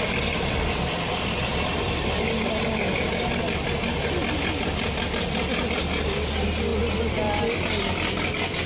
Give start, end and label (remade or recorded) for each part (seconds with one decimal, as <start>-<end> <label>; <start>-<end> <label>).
0.0-8.7 recorded